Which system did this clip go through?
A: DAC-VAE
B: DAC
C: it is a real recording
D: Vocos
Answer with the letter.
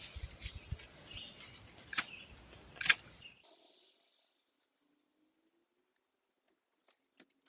C